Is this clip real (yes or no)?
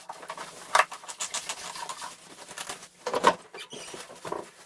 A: yes